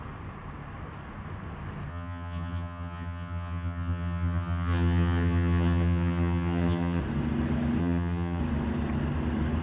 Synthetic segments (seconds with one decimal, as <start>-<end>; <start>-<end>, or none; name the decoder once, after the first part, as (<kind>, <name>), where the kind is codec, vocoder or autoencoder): 1.9-7.0 (vocoder, HiFi-GAN); 7.8-8.4